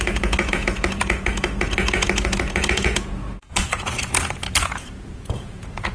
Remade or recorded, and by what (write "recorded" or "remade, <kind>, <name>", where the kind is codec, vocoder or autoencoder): remade, vocoder, Vocos